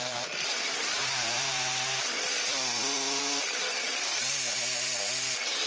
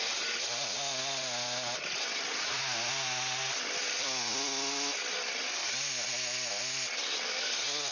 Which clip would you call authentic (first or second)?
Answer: second